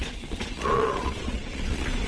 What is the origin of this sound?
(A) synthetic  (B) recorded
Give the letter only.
A